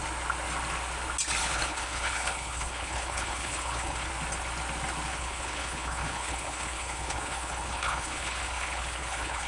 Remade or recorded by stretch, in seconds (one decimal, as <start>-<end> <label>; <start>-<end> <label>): 0.0-1.4 recorded; 1.4-4.1 remade; 4.1-5.1 recorded; 5.1-9.5 remade